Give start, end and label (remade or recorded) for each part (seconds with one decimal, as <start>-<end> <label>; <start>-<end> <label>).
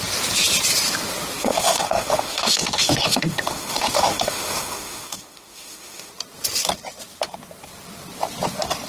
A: 0.0-1.4 recorded; 1.4-6.1 remade; 6.1-8.9 recorded